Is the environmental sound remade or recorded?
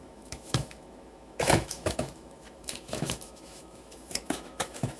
remade